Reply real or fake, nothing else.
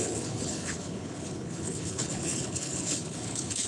fake